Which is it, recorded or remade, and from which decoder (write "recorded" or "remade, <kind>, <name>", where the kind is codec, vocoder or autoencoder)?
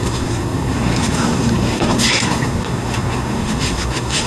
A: remade, codec, SNAC